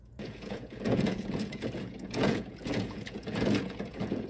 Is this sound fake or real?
fake